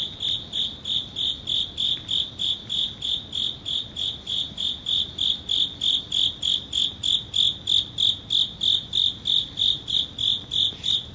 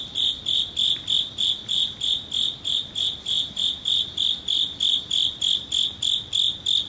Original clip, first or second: first